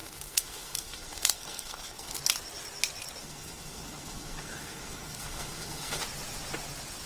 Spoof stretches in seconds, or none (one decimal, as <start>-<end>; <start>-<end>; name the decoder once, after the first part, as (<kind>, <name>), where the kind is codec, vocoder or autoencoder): 0.0-2.2 (codec, SNAC); 3.2-6.0